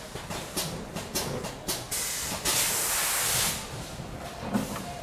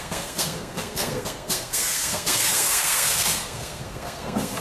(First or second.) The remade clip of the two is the second